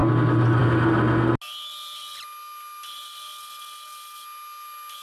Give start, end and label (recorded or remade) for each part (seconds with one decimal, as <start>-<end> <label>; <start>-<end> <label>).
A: 0.0-5.0 recorded